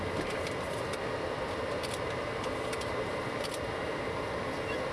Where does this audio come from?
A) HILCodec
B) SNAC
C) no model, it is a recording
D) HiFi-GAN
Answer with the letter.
C